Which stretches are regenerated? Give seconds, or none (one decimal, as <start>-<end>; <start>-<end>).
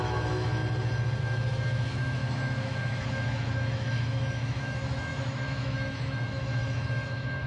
0.0-0.6; 1.2-7.5